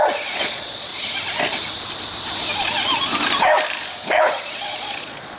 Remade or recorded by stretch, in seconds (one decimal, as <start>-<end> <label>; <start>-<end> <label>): 0.0-0.9 remade; 0.9-4.1 recorded; 4.1-5.4 remade